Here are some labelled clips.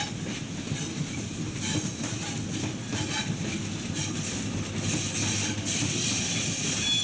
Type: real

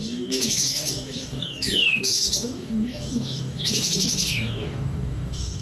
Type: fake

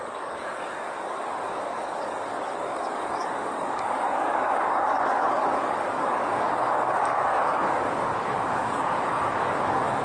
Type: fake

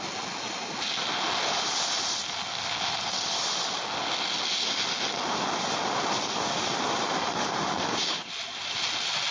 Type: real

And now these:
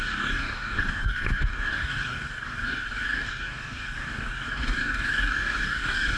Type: fake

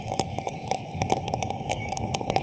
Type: fake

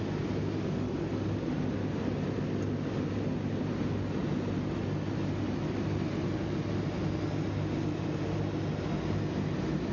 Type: real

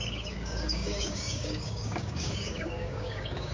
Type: fake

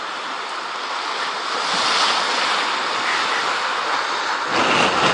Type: real